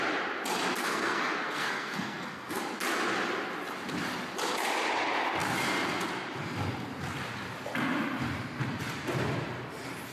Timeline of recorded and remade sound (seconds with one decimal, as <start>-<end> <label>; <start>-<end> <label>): 0.0-0.8 recorded; 0.8-2.6 remade; 2.6-10.1 recorded